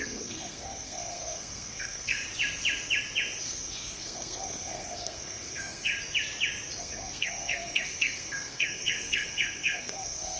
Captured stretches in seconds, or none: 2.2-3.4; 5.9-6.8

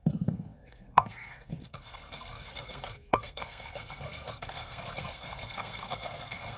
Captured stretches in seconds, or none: none

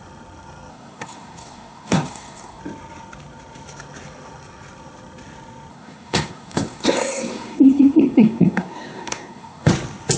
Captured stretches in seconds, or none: 0.0-0.7; 2.6-5.7; 9.7-10.2

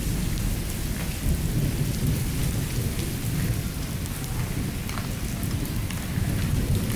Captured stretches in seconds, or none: 0.0-7.0

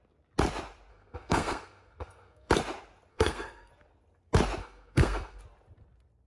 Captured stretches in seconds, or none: 0.0-0.9; 2.5-3.1; 3.7-4.6; 5.4-6.3

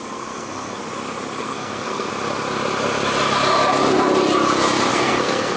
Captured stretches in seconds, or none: 0.8-1.4; 2.1-4.9

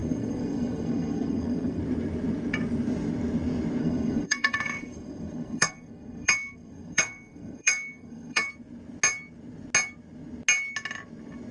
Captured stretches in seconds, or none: 1.8-3.8; 8.5-11.5